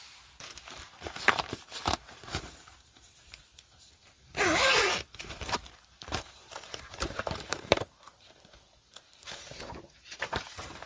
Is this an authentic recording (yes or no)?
no